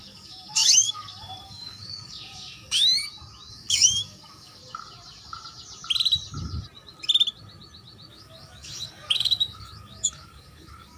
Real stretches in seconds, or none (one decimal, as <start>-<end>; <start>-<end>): 3.0-3.5; 4.6-8.1